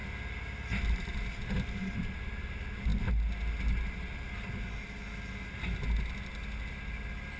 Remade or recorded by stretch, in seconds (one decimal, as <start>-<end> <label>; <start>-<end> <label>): 0.0-0.9 recorded; 0.9-2.9 remade; 2.9-7.4 recorded